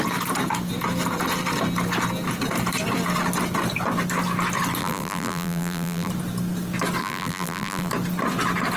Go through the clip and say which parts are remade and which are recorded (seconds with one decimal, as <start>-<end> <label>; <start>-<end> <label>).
0.0-4.8 recorded; 4.8-6.1 remade; 6.1-7.0 recorded; 7.0-7.9 remade; 7.9-8.8 recorded